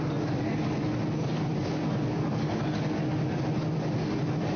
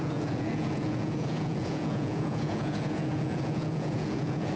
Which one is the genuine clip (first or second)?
first